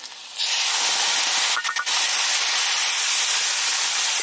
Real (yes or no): yes